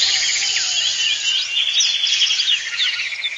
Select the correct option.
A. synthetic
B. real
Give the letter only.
B